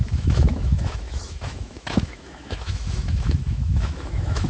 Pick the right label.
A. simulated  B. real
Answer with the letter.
A